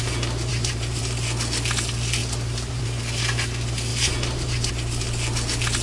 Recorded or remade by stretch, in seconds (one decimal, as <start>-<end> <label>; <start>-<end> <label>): 0.0-0.5 recorded; 0.5-1.0 remade; 1.0-2.2 recorded; 2.2-2.8 remade; 2.8-3.9 recorded; 3.9-4.7 remade; 4.7-5.8 recorded